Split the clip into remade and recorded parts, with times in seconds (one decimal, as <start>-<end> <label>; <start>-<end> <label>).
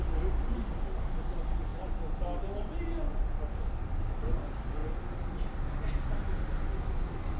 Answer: 0.0-7.4 recorded